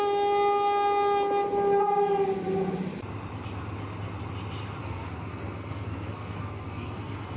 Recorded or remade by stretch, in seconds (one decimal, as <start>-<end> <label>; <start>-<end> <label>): 0.0-4.8 recorded; 4.8-7.4 remade